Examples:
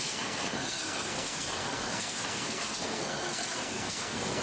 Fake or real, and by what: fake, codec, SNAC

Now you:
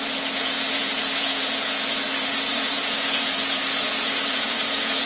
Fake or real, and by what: fake, vocoder, Vocos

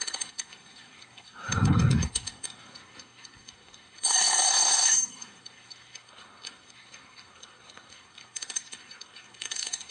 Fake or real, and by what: fake, codec, SNAC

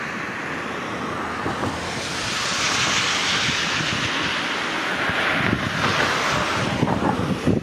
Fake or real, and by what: real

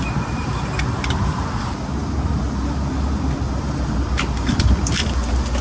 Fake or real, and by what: real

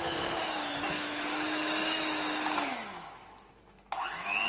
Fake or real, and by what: fake, autoencoder, DAC-VAE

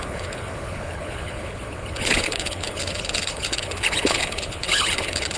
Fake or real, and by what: fake, codec, HILCodec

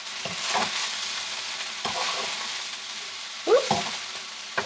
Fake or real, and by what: real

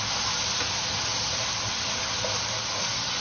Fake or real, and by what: real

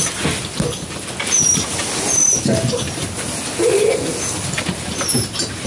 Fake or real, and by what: real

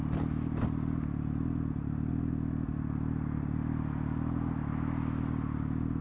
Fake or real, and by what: real